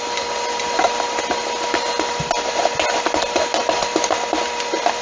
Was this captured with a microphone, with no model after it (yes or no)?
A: yes